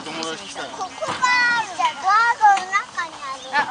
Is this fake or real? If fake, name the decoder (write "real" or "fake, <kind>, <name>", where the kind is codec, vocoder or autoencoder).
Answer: real